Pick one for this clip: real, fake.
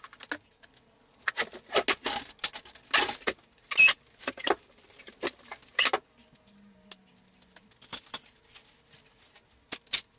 real